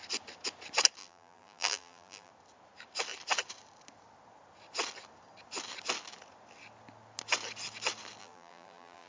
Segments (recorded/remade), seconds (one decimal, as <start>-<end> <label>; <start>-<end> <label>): 0.0-1.0 recorded; 1.0-2.3 remade; 2.3-8.2 recorded; 8.2-9.1 remade